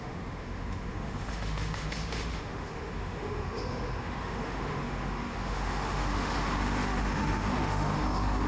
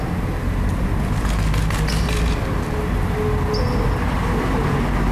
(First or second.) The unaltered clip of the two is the second